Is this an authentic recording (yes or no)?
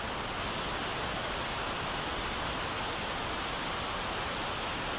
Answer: yes